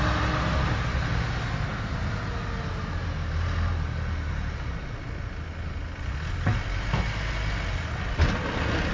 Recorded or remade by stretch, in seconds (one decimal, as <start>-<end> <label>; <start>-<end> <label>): 0.0-8.9 recorded